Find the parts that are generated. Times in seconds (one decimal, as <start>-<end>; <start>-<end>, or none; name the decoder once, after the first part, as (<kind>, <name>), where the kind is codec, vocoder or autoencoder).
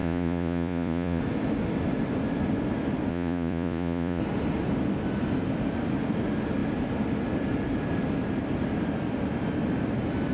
0.0-1.2 (vocoder, Vocos); 3.1-4.2